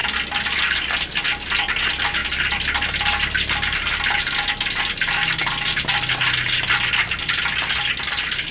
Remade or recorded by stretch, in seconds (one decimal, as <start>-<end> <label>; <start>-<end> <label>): 0.0-8.5 recorded